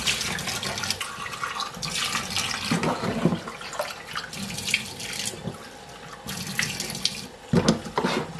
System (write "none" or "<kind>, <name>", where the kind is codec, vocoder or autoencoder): none